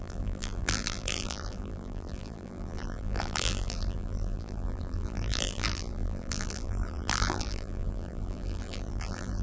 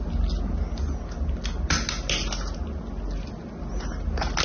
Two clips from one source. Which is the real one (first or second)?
second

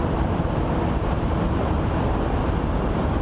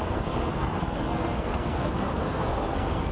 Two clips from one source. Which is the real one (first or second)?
first